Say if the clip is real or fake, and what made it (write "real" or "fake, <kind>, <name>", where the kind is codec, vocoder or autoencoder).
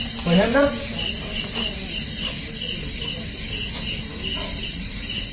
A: real